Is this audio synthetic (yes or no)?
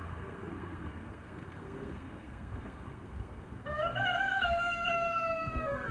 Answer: yes